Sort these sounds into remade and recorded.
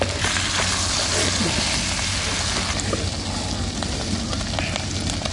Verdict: recorded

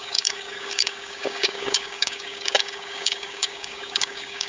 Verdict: remade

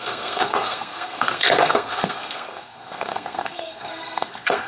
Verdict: remade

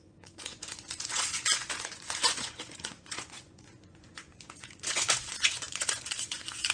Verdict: remade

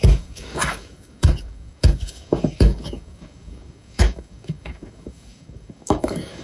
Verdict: remade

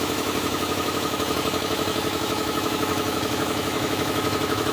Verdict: remade